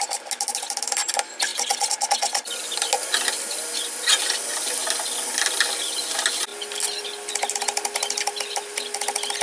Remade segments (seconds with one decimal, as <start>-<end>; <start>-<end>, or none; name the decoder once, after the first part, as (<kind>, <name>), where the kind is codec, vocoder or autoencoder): none